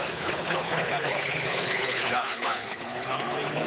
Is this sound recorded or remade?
remade